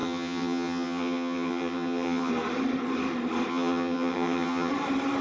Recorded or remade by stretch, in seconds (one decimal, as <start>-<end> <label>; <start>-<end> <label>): 0.0-2.3 remade; 2.3-3.5 recorded; 3.5-4.7 remade; 4.7-5.2 recorded